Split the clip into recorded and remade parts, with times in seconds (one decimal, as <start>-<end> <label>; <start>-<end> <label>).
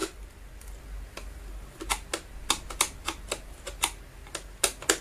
0.0-5.0 recorded